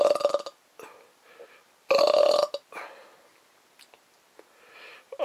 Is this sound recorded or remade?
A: recorded